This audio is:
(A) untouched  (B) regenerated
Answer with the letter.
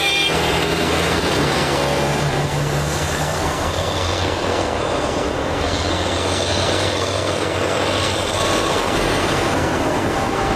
B